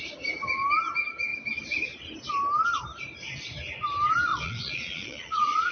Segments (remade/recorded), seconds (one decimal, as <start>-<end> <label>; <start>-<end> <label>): 0.0-4.3 recorded; 4.3-5.7 remade